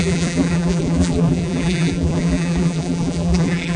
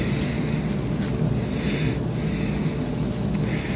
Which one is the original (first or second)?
second